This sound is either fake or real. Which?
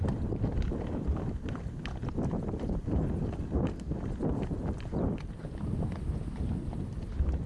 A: real